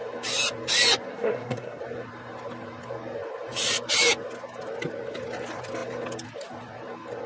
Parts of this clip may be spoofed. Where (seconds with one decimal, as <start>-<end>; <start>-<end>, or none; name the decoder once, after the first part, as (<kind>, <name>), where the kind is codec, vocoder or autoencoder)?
1.1-1.8 (codec, SNAC)